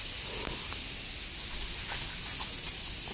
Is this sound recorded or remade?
recorded